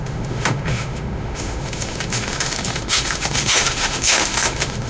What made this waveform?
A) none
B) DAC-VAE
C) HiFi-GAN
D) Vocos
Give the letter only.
B